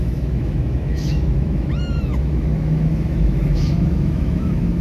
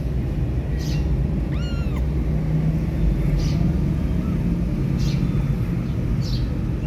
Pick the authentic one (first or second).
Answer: second